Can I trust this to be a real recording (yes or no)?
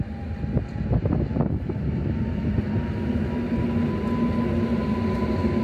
yes